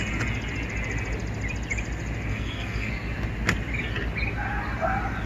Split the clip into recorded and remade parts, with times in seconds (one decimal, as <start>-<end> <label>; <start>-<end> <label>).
0.0-2.3 recorded; 2.3-2.9 remade; 2.9-5.3 recorded